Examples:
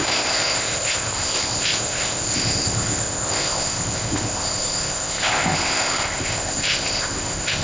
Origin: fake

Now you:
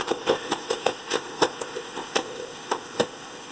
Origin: fake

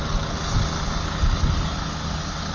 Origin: real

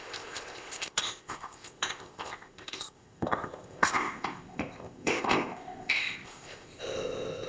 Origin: fake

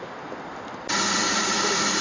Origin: real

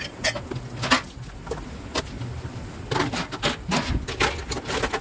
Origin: real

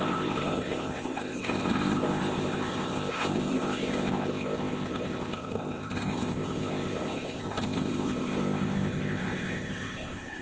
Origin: fake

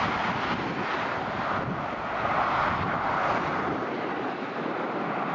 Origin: real